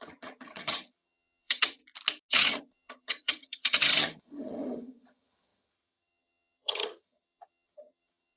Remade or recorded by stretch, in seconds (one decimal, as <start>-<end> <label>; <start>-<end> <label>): 0.0-1.8 remade; 1.8-2.3 recorded; 2.3-8.4 remade